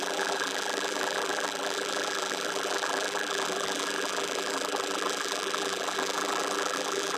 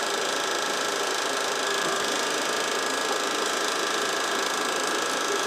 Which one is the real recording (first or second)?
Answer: second